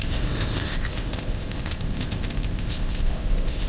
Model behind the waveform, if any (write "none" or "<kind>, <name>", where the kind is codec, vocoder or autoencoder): codec, ZipCodec